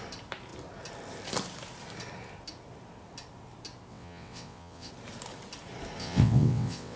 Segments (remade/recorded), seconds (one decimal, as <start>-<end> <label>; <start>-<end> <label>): 0.0-3.9 recorded; 3.9-4.9 remade; 4.9-6.0 recorded; 6.0-7.0 remade